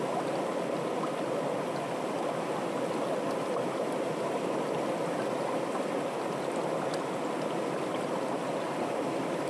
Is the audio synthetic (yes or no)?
no